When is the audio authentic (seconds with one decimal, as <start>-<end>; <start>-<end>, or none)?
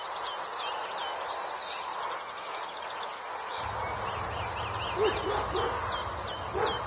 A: 0.0-6.9